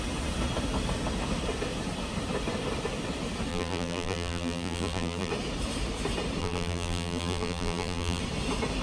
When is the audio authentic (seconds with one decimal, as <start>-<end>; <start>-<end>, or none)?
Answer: 0.0-3.5; 5.3-6.4; 8.2-8.8